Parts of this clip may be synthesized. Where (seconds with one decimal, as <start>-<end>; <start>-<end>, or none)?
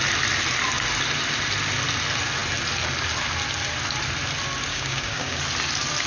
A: 4.7-5.4